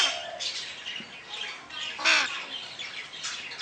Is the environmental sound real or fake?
fake